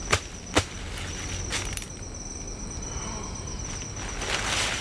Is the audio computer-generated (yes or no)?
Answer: no